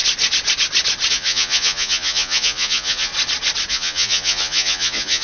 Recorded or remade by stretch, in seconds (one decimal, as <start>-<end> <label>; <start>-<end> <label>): 0.0-1.1 recorded; 1.1-3.1 remade; 3.1-3.7 recorded; 3.7-5.2 remade